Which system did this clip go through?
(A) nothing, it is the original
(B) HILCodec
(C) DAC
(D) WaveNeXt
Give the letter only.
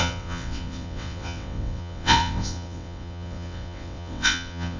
D